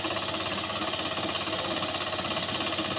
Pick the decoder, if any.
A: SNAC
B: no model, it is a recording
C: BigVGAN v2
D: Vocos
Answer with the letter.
B